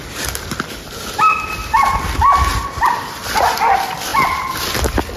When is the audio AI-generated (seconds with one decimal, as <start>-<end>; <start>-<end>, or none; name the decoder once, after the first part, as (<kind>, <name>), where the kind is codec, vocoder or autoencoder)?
2.5-3.4 (vocoder, BigVGAN v2)